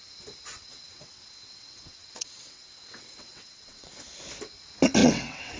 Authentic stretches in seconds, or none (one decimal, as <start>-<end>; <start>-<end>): 0.0-0.5; 3.9-5.0